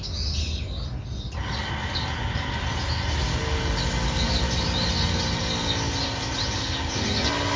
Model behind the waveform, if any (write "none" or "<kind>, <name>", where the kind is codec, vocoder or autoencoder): none